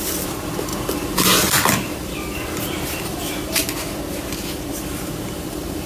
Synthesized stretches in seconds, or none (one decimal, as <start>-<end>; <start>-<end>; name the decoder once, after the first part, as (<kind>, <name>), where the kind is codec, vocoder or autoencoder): 0.0-0.7 (vocoder, BigVGAN v2); 1.5-3.6; 4.7-5.9